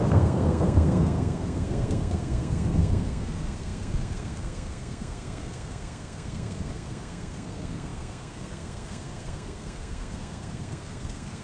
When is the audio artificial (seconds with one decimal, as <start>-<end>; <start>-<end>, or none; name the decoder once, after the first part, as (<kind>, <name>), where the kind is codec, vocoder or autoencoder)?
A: 0.0-11.4 (codec, SNAC)